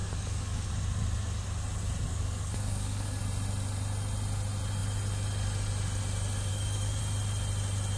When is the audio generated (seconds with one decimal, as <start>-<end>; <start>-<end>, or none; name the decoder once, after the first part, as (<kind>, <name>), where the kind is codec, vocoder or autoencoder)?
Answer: 0.0-0.7 (codec, DAC); 2.1-3.2; 6.5-7.0